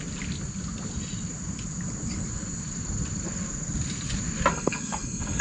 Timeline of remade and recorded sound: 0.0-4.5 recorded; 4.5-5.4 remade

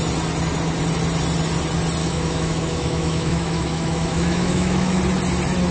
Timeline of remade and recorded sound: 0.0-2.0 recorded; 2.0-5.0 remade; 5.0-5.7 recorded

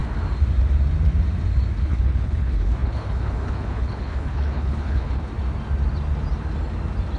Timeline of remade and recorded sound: 0.0-1.8 recorded; 1.8-5.3 remade; 5.3-7.2 recorded

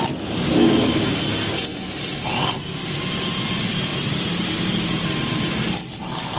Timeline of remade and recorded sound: 0.0-3.9 recorded; 3.9-5.5 remade; 5.5-6.4 recorded